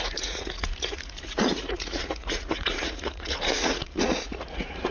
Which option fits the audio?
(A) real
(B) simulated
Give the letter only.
B